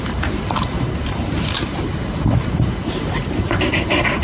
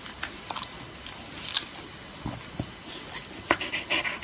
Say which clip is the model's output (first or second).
first